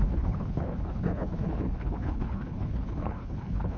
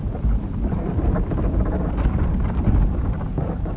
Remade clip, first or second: first